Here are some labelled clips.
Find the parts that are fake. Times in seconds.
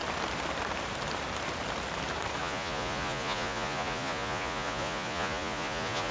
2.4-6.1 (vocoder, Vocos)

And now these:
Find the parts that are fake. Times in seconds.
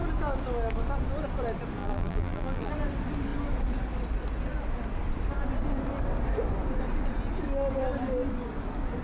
1.8-2.7 (vocoder, BigVGAN v2)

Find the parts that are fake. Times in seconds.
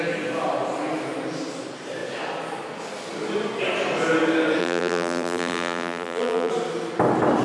4.6-6.5 (vocoder, BigVGAN v2)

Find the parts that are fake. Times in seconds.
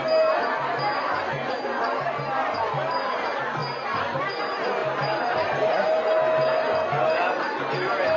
none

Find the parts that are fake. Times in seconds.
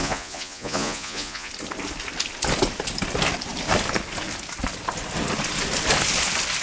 0.0-1.5 (vocoder, Vocos)